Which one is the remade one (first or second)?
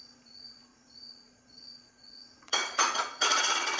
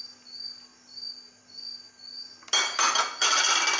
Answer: first